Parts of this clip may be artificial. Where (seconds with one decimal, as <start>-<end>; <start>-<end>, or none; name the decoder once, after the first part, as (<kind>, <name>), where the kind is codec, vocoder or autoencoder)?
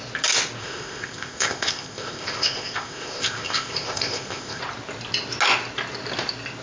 0.6-4.6 (codec, ZipCodec)